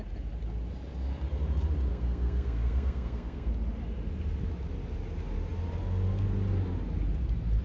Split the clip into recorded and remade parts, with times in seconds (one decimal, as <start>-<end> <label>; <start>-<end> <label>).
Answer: 0.0-1.9 recorded; 1.9-3.5 remade; 3.5-7.6 recorded